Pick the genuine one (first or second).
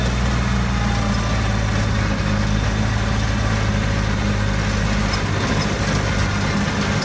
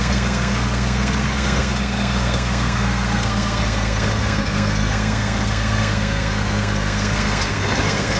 first